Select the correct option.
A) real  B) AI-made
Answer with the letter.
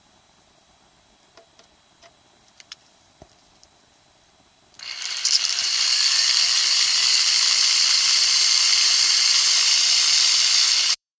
B